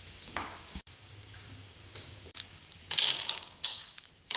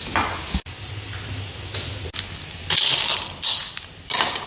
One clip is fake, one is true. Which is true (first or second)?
second